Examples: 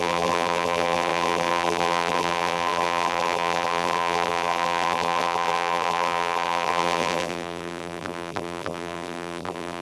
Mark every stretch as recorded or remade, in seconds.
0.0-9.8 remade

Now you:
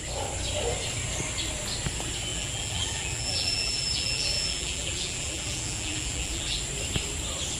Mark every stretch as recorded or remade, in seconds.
0.0-2.3 recorded; 2.3-6.6 remade; 6.6-7.6 recorded

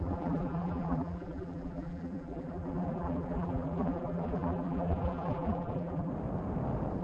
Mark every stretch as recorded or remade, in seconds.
0.0-6.1 remade; 6.1-7.0 recorded

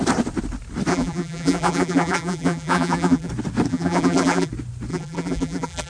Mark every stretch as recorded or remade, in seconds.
0.0-0.9 recorded; 0.9-3.3 remade; 3.3-3.7 recorded; 3.7-4.5 remade; 4.5-4.9 recorded; 4.9-5.9 remade

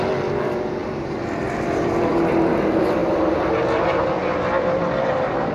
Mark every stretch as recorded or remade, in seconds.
0.0-0.8 recorded; 0.8-2.5 remade; 2.5-3.0 recorded; 3.0-4.0 remade; 4.0-5.5 recorded

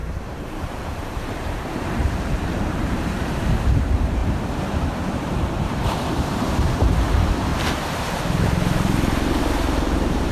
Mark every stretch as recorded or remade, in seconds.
0.0-7.5 remade; 7.5-9.4 recorded; 9.4-10.3 remade